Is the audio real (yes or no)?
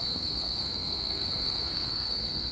no